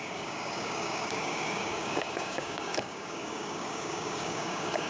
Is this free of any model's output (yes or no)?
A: no